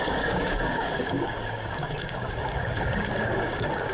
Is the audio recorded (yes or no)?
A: no